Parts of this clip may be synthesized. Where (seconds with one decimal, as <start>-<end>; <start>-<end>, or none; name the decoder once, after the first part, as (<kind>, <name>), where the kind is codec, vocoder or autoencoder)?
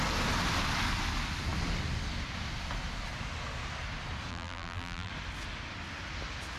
4.3-5.1 (vocoder, BigVGAN v2)